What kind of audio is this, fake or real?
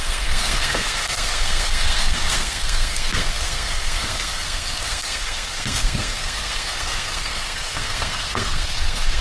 fake